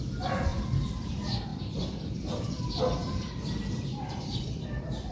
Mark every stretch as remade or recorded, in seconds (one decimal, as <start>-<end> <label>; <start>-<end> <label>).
0.0-0.5 recorded; 0.5-1.1 remade; 1.1-1.5 recorded; 1.5-2.6 remade; 2.6-3.0 recorded; 3.0-5.1 remade